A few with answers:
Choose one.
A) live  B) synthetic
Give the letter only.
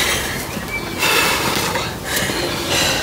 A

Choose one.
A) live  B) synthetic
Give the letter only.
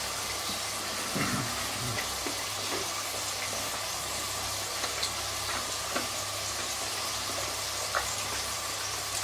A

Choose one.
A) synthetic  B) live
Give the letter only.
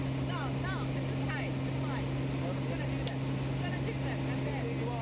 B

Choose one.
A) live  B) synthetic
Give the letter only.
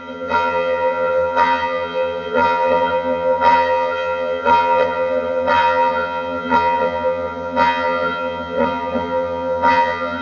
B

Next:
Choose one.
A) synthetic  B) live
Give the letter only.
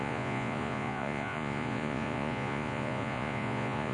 A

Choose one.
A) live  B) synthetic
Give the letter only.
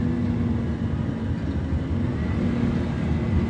A